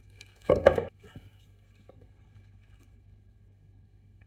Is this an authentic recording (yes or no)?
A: no